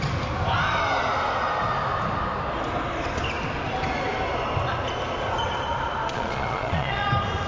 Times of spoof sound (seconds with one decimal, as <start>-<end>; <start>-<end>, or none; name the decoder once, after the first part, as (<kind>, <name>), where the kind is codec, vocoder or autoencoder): 6.1-7.1 (vocoder, Vocos)